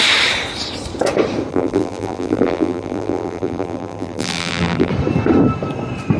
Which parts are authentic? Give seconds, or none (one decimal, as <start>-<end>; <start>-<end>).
0.0-1.5; 4.9-6.2